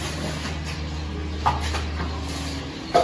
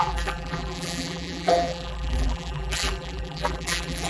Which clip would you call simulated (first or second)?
second